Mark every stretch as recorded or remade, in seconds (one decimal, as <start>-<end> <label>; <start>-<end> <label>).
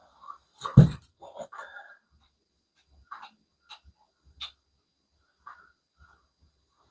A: 0.0-6.9 recorded